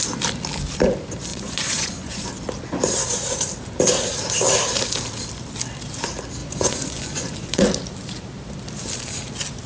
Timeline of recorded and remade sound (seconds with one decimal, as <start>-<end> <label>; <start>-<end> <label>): 0.0-1.3 recorded; 1.3-2.3 remade; 2.3-6.4 recorded; 6.4-7.6 remade; 7.6-9.7 recorded